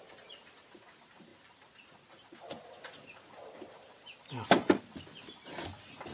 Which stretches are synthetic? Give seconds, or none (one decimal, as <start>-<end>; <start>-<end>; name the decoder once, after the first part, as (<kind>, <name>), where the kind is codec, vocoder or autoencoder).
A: none